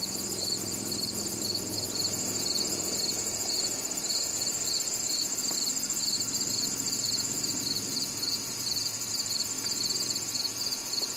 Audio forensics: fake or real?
fake